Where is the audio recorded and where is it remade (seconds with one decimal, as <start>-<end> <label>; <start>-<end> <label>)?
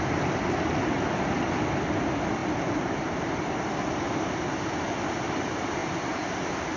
0.0-6.8 recorded